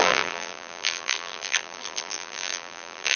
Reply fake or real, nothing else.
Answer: fake